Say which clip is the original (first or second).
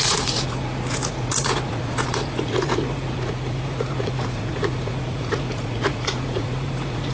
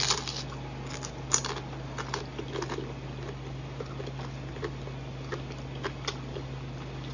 second